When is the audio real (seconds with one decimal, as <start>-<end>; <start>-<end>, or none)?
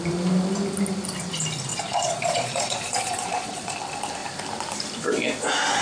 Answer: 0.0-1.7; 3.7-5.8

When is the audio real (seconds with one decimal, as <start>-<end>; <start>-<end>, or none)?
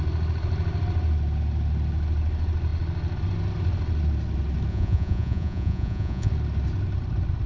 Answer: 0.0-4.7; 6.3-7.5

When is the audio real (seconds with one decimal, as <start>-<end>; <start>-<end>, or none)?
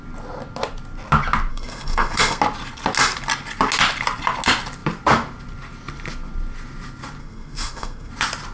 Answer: 0.0-1.5; 2.4-7.2; 8.1-8.5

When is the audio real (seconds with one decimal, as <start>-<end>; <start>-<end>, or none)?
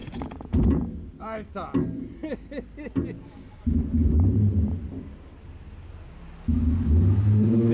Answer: 1.1-7.7